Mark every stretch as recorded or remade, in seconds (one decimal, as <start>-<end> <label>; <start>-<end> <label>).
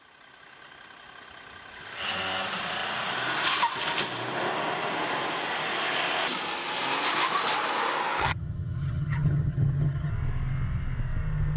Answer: 0.0-8.2 recorded; 8.2-10.1 remade; 10.1-11.6 recorded